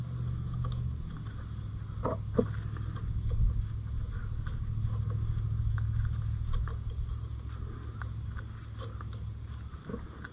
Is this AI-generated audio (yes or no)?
no